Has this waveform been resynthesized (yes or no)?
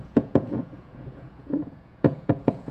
yes